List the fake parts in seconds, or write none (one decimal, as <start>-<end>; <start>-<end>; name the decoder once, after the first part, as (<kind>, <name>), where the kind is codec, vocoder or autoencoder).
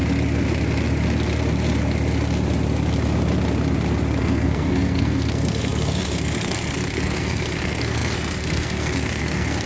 4.2-9.7 (codec, SNAC)